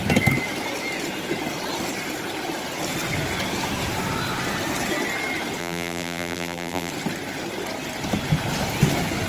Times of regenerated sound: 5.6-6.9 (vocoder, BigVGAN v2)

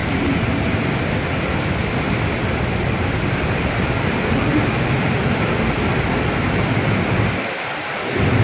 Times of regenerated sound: 0.7-8.4 (vocoder, BigVGAN v2)

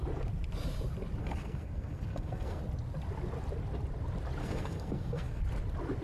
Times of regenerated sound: 1.2-2.6 (codec, SNAC); 4.4-5.4